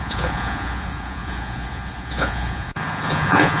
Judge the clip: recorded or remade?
remade